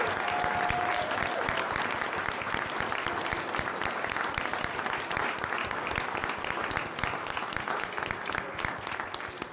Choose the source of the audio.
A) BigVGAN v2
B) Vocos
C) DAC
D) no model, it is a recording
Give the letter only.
D